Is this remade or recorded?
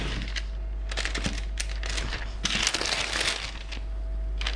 recorded